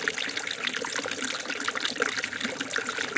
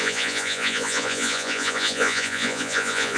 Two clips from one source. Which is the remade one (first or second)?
second